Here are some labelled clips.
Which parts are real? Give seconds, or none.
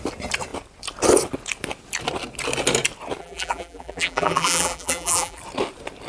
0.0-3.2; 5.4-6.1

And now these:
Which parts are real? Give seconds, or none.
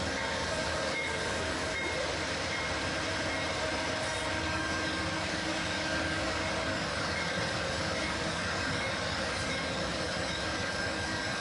1.6-4.4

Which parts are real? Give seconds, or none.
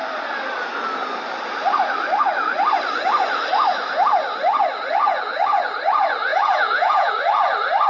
0.0-6.3; 7.1-7.9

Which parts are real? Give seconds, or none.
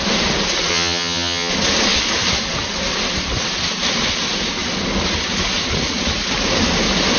0.0-0.7; 1.5-7.2